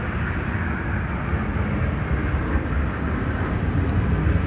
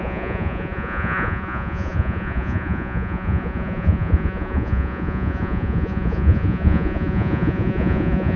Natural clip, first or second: first